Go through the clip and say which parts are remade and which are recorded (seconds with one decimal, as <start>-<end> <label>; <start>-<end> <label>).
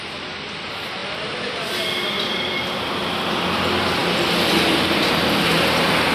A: 0.0-6.1 recorded